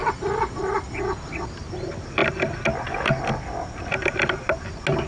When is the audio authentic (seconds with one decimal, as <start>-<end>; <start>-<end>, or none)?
1.0-5.1